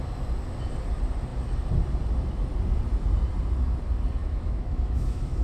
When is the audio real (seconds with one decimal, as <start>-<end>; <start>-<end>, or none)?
0.0-4.2